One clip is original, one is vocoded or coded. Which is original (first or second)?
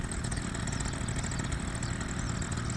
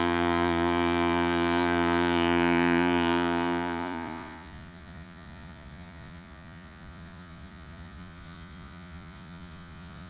first